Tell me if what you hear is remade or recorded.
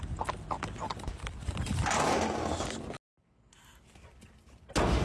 recorded